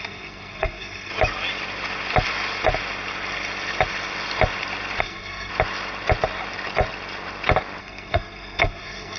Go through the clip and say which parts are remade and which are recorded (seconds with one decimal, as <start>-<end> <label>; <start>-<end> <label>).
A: 0.0-1.1 remade; 1.1-5.0 recorded; 5.0-5.5 remade; 5.5-7.8 recorded; 7.8-9.2 remade